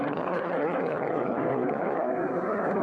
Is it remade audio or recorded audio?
remade